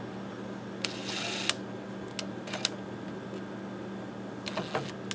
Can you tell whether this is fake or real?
real